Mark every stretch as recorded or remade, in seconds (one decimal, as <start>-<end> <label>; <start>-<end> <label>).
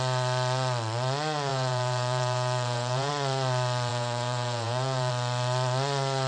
0.0-1.5 recorded; 1.5-3.1 remade; 3.1-3.9 recorded; 3.9-5.1 remade; 5.1-6.3 recorded